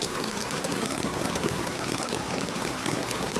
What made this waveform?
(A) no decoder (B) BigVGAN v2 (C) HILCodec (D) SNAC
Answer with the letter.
D